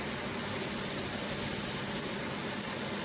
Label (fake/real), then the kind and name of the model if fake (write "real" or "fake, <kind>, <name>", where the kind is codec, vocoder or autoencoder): real